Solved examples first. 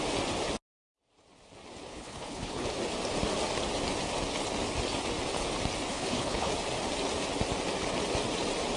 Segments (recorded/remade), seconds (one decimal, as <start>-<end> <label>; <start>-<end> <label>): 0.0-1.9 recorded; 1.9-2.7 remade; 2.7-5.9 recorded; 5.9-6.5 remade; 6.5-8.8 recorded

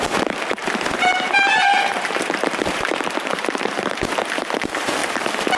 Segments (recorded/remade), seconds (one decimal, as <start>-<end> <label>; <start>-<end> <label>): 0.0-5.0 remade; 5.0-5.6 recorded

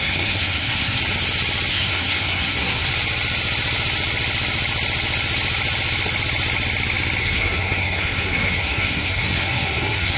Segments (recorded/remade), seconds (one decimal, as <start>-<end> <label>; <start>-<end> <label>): 0.0-1.0 remade; 1.0-1.7 recorded; 1.7-2.9 remade; 2.9-7.2 recorded; 7.2-10.2 remade

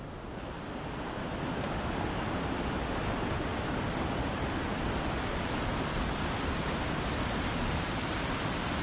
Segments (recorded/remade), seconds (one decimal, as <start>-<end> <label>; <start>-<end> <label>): 0.0-8.8 recorded

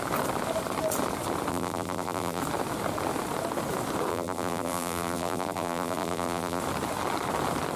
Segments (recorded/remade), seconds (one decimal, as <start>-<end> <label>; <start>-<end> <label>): 0.0-1.5 recorded; 1.5-2.4 remade; 2.4-4.1 recorded; 4.1-6.6 remade; 6.6-7.8 recorded

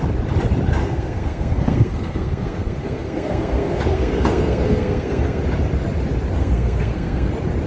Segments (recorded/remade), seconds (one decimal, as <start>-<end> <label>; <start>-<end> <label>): 0.0-0.8 recorded; 0.8-5.4 remade; 5.4-6.4 recorded; 6.4-7.3 remade; 7.3-7.7 recorded